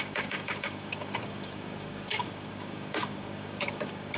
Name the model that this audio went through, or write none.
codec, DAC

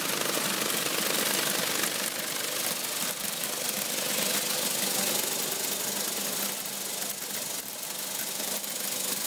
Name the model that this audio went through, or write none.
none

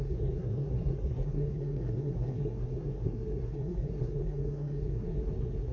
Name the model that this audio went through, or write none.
codec, SNAC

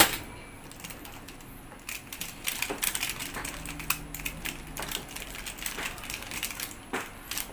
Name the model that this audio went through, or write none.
none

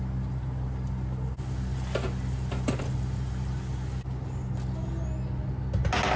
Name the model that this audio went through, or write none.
none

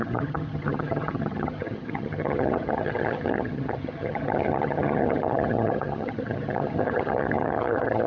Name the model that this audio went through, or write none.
vocoder, HiFi-GAN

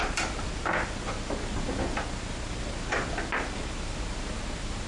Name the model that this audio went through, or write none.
none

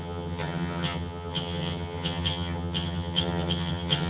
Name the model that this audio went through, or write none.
vocoder, HiFi-GAN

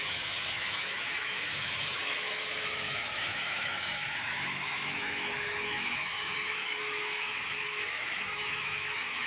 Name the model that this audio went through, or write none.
autoencoder, DAC-VAE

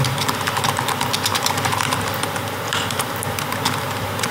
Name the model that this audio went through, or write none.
vocoder, BigVGAN v2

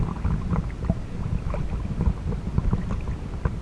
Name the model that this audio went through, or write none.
none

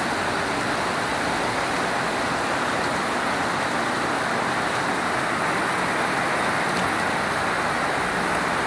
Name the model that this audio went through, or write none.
none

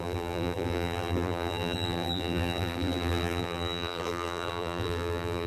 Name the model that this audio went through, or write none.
vocoder, BigVGAN v2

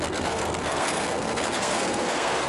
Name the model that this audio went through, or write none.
codec, SNAC